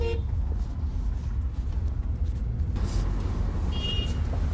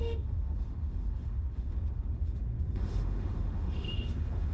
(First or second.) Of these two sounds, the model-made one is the second